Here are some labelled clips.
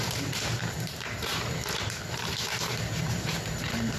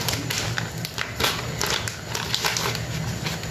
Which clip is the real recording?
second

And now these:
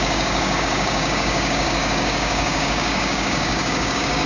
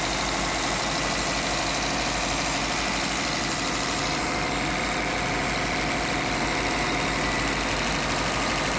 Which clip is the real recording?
second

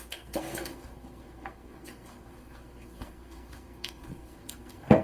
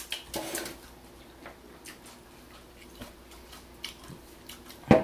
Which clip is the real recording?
second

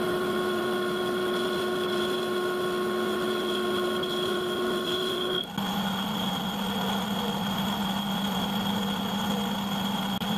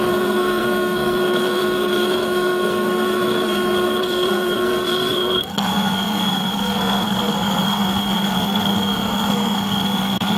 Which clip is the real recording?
first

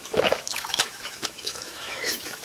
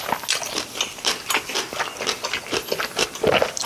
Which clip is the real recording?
second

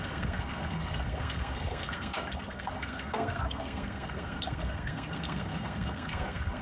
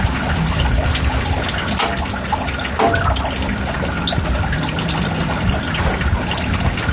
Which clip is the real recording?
second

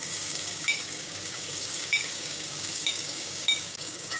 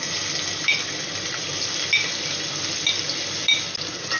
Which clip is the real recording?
second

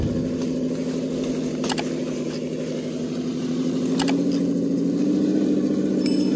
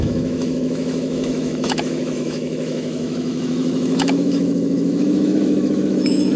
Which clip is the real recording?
first